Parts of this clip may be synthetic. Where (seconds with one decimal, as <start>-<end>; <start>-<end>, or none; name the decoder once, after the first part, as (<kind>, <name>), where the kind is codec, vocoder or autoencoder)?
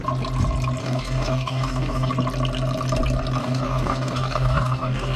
0.8-2.1 (codec, DAC); 3.4-5.2